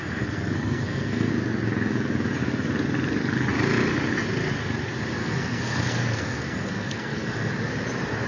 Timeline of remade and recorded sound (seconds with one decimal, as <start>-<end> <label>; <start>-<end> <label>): 0.0-1.3 remade; 1.3-5.2 recorded; 5.2-7.5 remade; 7.5-8.3 recorded